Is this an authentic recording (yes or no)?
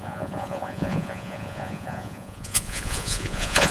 no